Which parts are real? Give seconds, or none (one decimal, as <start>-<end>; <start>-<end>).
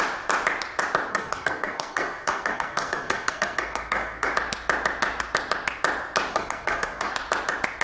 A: 0.0-1.1; 4.3-6.3; 7.1-7.8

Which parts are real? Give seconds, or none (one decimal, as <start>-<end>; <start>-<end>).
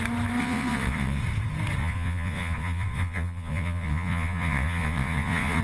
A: 0.0-0.4; 1.2-1.8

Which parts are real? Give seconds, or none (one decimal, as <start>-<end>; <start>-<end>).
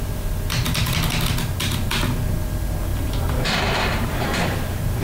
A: 0.0-2.9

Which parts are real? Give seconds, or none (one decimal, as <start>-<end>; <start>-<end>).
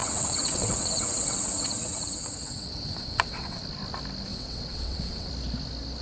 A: 3.6-4.3; 5.3-6.0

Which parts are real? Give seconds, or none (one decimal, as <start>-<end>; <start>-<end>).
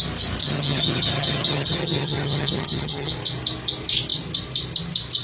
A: 0.0-0.4; 3.1-5.2